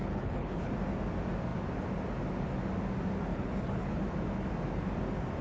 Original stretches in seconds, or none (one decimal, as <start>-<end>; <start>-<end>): 0.7-3.3; 4.0-5.4